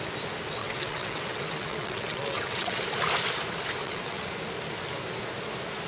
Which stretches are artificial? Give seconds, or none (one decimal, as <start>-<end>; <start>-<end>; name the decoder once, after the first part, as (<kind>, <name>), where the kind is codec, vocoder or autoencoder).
0.6-2.8 (vocoder, WaveNeXt); 3.8-4.3